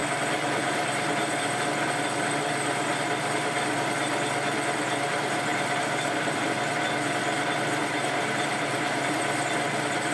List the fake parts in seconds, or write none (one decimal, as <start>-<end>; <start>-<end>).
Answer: 0.0-1.1; 5.5-6.7; 7.8-9.1